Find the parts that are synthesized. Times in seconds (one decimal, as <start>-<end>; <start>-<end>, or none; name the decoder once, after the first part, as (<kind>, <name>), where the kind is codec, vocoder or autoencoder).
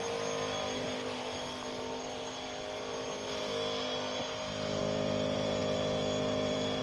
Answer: 0.0-2.9 (vocoder, BigVGAN v2); 4.8-6.8